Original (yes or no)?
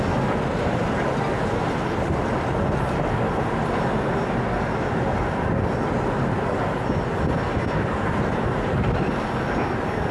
yes